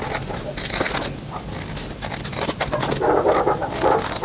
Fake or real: real